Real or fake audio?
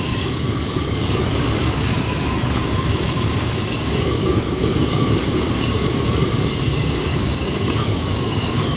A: fake